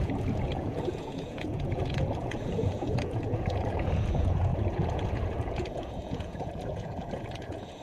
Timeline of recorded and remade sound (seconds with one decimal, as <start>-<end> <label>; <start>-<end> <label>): 0.0-7.8 remade